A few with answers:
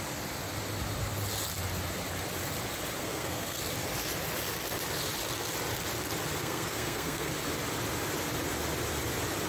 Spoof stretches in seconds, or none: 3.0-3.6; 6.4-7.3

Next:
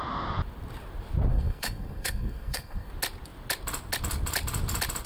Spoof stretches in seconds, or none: 1.3-2.9